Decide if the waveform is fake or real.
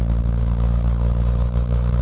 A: fake